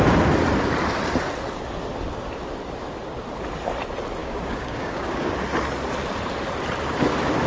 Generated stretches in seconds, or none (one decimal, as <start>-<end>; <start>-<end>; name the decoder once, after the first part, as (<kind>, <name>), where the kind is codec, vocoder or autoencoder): 4.2-5.3 (codec, DAC)